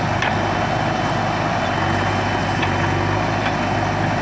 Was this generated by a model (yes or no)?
no